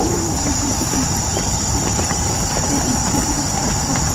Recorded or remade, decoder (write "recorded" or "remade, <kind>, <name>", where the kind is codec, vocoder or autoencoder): remade, vocoder, BigVGAN v2